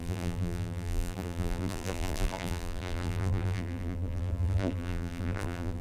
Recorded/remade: remade